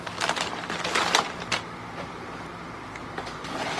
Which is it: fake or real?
real